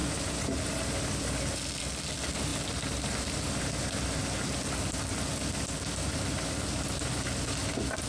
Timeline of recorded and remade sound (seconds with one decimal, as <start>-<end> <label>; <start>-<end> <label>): 0.0-8.1 recorded